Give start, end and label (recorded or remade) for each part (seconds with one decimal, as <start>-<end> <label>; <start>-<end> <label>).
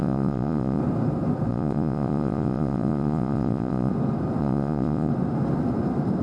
0.0-0.8 remade; 0.8-1.5 recorded; 1.5-3.9 remade; 3.9-4.4 recorded; 4.4-5.1 remade; 5.1-6.2 recorded